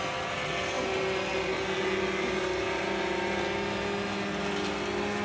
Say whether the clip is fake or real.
real